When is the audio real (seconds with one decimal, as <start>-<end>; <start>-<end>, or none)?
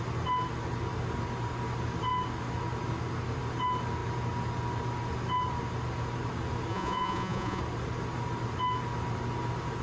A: 0.0-6.7; 7.6-9.8